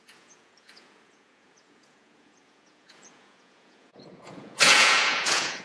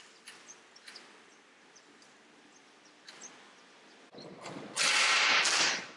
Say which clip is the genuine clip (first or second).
second